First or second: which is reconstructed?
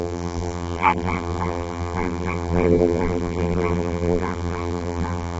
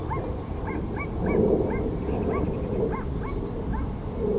first